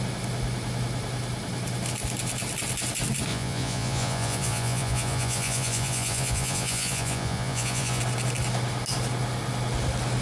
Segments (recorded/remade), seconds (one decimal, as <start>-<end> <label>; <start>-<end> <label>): 0.0-3.3 recorded; 3.3-8.0 remade; 8.0-10.2 recorded